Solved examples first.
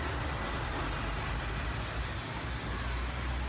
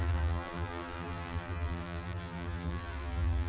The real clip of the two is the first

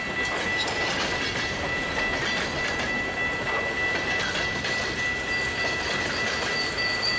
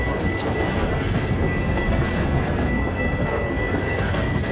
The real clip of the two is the first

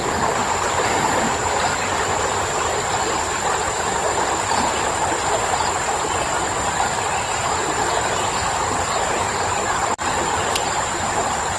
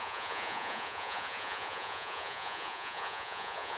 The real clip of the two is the first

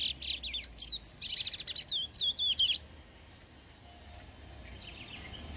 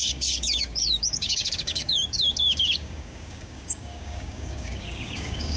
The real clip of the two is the first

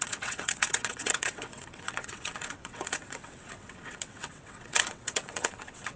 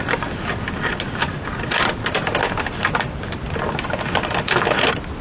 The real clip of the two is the second